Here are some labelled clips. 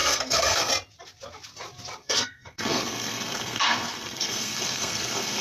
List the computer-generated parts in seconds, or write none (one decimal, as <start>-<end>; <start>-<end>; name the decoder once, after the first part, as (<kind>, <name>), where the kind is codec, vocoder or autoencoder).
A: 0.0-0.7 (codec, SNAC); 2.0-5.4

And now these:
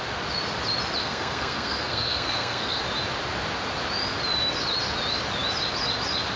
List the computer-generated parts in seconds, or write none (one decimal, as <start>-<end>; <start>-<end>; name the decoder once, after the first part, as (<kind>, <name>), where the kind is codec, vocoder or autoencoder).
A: 1.0-2.8 (codec, SNAC)

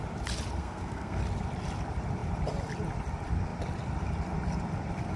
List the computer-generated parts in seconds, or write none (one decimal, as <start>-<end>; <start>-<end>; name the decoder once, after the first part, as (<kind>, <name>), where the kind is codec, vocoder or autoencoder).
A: 0.6-1.2 (codec, SNAC)

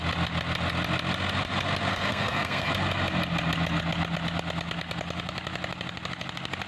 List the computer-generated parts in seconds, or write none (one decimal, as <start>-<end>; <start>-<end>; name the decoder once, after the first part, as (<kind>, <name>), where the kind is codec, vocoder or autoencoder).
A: 1.9-2.7 (codec, SNAC)

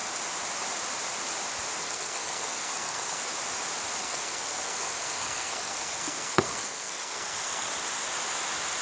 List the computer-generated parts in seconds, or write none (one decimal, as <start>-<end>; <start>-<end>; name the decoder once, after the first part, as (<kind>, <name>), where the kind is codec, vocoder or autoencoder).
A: 1.8-3.2 (codec, SNAC); 4.0-7.7